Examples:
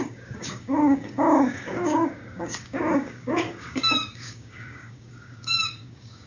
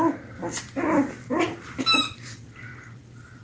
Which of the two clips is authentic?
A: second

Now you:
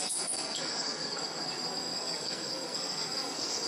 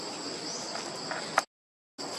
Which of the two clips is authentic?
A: second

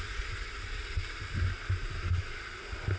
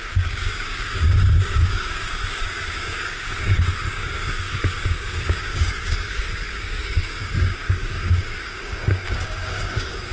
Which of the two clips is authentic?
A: first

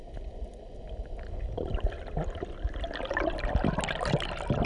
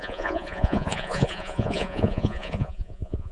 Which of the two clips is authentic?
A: first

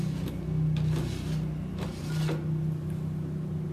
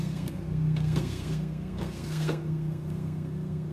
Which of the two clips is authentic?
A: first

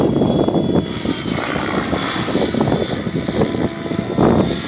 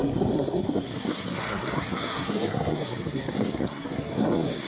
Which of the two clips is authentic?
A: first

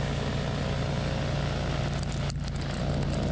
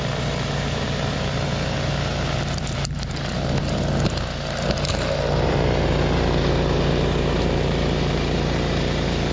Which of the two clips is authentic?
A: first